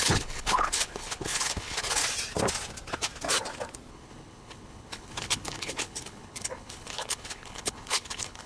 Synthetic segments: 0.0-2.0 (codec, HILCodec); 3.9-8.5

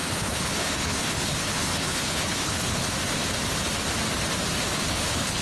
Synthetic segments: 0.0-2.9 (codec, HILCodec); 4.7-5.4

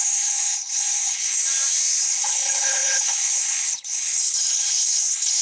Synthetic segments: 0.0-1.4 (codec, HILCodec); 2.0-5.4